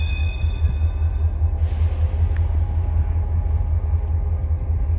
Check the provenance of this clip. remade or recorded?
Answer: recorded